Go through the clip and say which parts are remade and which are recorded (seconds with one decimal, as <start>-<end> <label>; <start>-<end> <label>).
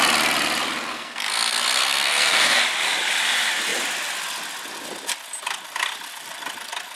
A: 0.0-0.9 recorded; 0.9-2.6 remade; 2.6-7.0 recorded